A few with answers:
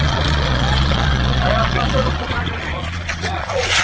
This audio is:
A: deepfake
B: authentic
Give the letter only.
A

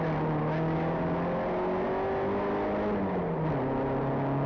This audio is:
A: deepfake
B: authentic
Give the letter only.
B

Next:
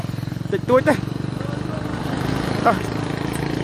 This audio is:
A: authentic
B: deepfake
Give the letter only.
A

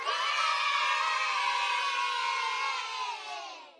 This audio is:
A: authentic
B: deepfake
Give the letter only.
A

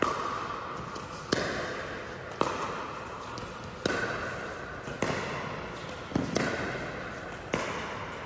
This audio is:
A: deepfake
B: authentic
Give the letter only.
B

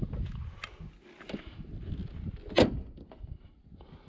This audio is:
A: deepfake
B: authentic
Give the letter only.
B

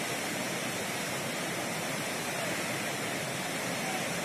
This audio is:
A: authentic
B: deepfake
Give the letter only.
A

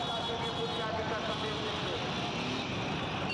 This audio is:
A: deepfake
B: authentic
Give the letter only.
B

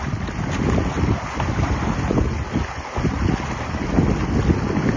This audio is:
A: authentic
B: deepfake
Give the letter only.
A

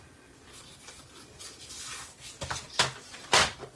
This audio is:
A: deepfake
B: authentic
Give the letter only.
B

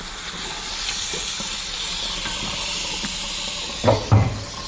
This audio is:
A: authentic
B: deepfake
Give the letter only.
A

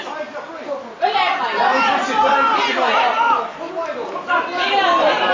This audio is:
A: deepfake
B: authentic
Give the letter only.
B